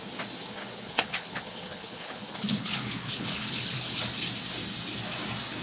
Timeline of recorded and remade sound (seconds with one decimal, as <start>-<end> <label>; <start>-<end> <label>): 0.0-0.6 recorded; 0.6-4.0 remade; 4.0-5.6 recorded